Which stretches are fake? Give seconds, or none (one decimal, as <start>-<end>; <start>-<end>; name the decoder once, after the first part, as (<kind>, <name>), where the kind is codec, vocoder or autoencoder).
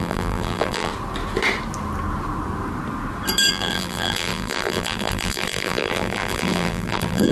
0.0-0.9 (vocoder, BigVGAN v2); 3.5-7.3